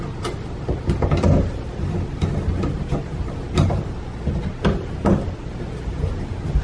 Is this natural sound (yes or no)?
yes